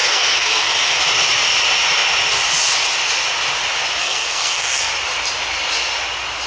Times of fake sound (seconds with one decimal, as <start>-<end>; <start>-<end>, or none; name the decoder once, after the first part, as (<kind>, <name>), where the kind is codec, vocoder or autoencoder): 0.0-1.0 (codec, SNAC); 4.0-4.9